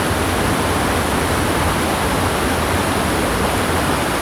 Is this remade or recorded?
recorded